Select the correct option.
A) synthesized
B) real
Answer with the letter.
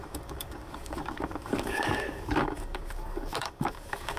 A